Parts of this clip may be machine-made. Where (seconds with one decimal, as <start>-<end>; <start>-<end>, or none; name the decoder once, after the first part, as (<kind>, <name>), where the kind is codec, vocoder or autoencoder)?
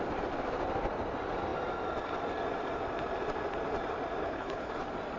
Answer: 4.2-4.7 (codec, HILCodec)